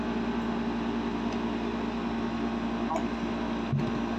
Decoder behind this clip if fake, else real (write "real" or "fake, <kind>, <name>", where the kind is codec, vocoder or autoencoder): real